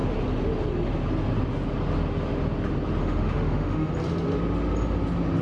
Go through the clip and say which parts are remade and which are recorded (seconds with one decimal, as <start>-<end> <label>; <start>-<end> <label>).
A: 0.0-3.0 recorded; 3.0-3.9 remade; 3.9-5.4 recorded